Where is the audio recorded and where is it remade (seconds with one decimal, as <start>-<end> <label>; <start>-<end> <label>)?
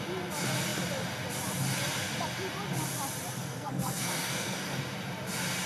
0.0-3.4 recorded; 3.4-4.8 remade; 4.8-5.7 recorded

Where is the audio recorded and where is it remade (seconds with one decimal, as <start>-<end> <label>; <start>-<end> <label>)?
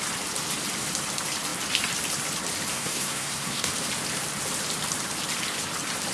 0.0-2.7 recorded; 2.7-3.7 remade; 3.7-6.1 recorded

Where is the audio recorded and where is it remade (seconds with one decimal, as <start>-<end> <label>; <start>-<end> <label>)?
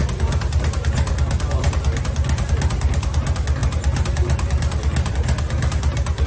0.0-6.3 recorded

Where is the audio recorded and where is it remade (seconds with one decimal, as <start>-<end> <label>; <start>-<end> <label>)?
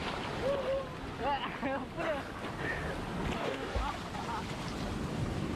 0.0-3.4 recorded; 3.4-3.8 remade; 3.8-5.1 recorded; 5.1-5.6 remade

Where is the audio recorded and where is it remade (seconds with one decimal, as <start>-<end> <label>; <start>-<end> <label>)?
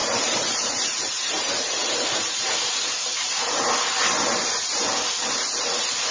0.0-3.7 remade; 3.7-6.1 recorded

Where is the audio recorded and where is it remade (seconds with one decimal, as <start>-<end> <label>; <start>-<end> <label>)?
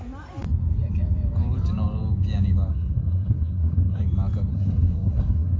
0.0-2.7 recorded; 2.7-4.0 remade; 4.0-4.5 recorded; 4.5-5.6 remade